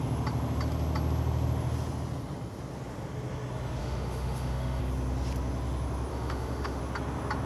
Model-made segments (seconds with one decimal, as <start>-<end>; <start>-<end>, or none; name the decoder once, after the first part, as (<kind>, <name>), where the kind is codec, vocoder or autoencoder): 3.8-4.8 (autoencoder, DAC-VAE); 6.1-6.8